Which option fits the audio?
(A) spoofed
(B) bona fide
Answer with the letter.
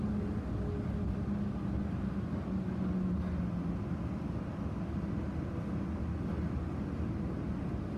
B